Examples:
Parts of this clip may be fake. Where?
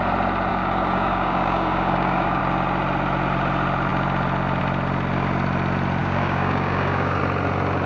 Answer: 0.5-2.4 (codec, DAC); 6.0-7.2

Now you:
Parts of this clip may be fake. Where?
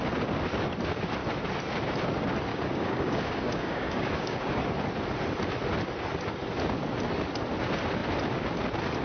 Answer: 2.5-4.6 (codec, DAC)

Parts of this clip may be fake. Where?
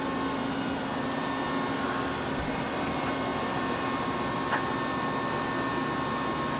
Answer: none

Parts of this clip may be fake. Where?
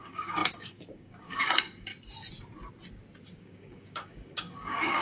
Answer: 0.0-1.9 (codec, DAC); 3.4-5.0